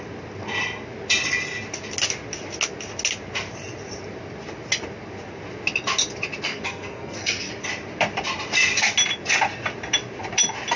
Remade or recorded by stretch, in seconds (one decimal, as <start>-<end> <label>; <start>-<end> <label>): 0.0-6.5 recorded; 6.5-7.5 remade; 7.5-10.8 recorded